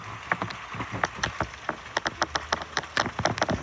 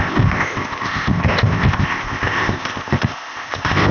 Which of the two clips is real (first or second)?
first